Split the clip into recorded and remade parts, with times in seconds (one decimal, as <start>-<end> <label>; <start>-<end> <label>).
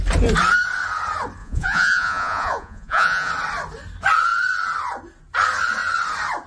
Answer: 0.0-1.4 recorded; 1.4-3.3 remade; 3.3-6.5 recorded